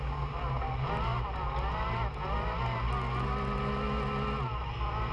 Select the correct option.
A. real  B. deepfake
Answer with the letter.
A